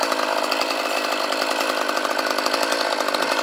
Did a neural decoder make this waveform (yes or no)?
no